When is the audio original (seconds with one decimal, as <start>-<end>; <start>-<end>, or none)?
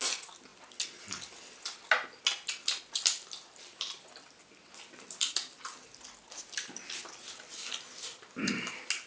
0.0-9.1